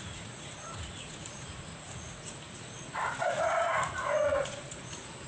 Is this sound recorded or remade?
remade